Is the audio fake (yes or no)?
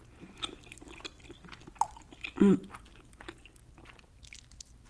no